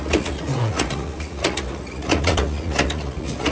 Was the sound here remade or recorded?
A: remade